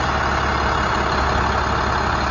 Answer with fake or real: real